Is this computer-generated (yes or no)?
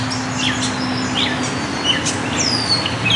no